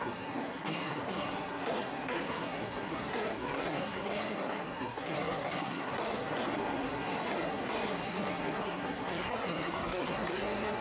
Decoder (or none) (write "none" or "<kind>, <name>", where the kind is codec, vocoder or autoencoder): codec, SNAC